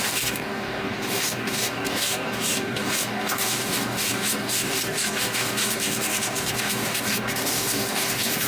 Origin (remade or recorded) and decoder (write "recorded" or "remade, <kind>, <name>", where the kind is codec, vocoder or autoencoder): remade, codec, DAC